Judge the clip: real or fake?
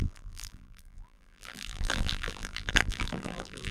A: fake